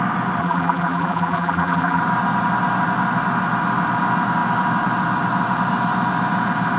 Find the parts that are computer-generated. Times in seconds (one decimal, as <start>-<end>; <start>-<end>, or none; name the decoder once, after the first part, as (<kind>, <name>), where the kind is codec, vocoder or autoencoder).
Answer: 0.4-2.0 (vocoder, BigVGAN v2)